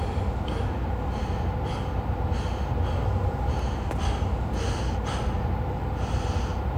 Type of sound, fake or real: real